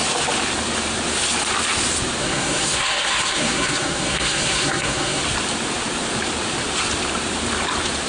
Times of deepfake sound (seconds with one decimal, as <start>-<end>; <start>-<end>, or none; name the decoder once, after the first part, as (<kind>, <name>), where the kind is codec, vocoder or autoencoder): 2.2-5.2 (codec, SNAC)